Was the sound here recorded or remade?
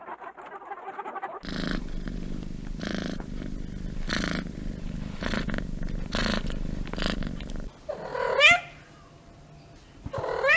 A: recorded